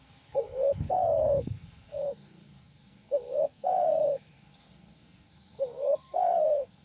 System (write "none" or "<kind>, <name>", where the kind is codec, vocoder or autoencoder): codec, SNAC